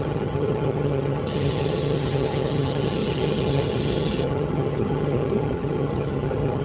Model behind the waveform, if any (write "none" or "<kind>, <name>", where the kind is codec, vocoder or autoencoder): vocoder, HiFi-GAN